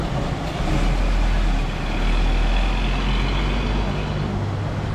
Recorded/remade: recorded